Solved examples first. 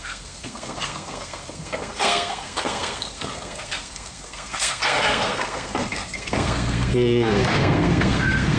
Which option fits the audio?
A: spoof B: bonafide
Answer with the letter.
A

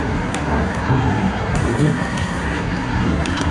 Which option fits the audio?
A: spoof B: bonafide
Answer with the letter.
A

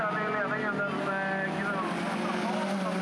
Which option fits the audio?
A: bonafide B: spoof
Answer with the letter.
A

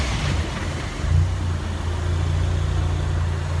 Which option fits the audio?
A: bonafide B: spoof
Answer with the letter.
A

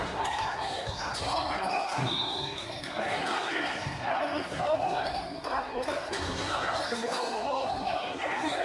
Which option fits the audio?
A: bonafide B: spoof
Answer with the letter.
B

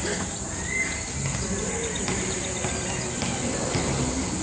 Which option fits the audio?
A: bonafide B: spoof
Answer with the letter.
A